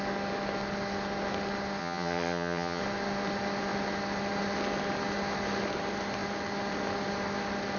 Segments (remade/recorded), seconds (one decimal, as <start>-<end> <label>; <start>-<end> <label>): 0.0-1.8 recorded; 1.8-2.8 remade; 2.8-7.8 recorded